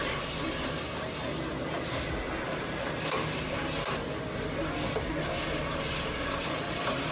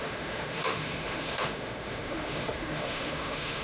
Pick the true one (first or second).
first